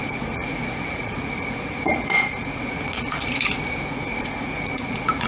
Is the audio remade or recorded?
remade